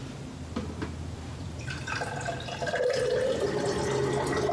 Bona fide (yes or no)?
yes